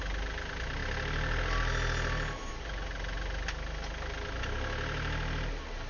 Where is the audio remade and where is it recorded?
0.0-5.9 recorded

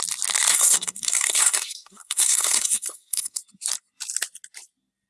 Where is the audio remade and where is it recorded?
0.0-0.5 recorded; 0.5-3.4 remade; 3.4-5.1 recorded

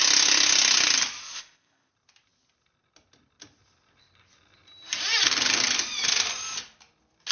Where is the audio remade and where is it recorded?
0.0-1.2 recorded; 1.2-1.9 remade; 1.9-7.3 recorded

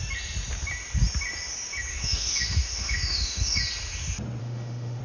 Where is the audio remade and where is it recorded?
0.0-1.9 recorded; 1.9-3.6 remade; 3.6-4.4 recorded; 4.4-5.0 remade

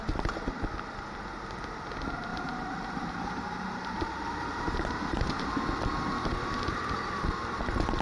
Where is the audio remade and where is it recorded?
0.0-2.3 recorded; 2.3-5.6 remade; 5.6-8.0 recorded

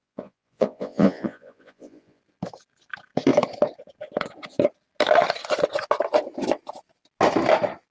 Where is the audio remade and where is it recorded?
0.0-2.2 remade; 2.2-7.9 recorded

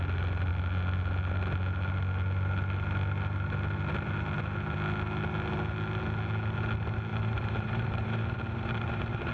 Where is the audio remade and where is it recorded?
0.0-7.1 recorded; 7.1-9.3 remade